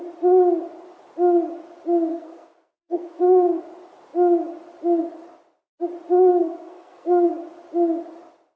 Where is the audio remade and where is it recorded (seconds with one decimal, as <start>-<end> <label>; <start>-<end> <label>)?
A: 0.0-2.1 recorded; 2.1-3.6 remade; 3.6-6.3 recorded; 6.3-7.3 remade; 7.3-8.6 recorded